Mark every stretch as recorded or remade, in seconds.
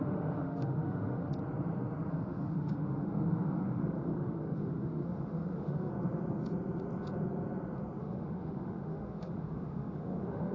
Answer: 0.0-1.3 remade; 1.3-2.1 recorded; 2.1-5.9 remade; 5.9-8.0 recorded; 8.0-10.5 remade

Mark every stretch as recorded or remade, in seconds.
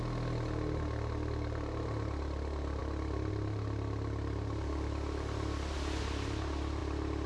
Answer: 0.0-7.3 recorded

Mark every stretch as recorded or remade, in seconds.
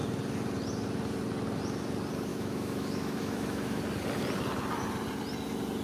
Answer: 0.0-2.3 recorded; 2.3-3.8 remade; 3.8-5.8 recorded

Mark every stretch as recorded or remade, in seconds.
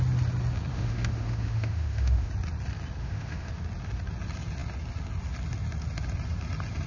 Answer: 0.0-0.7 recorded; 0.7-2.3 remade; 2.3-3.0 recorded; 3.0-3.5 remade; 3.5-6.9 recorded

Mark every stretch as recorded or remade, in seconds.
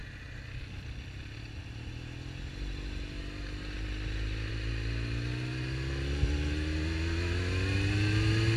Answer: 0.0-8.6 recorded